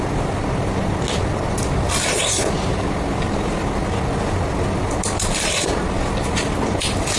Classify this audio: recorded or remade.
recorded